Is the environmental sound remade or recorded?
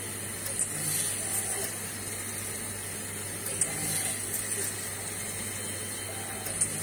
recorded